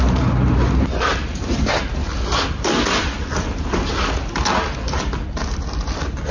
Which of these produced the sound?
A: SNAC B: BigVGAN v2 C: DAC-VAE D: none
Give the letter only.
D